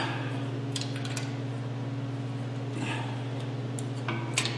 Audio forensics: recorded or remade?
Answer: recorded